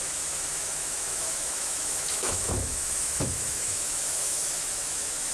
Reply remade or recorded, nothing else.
remade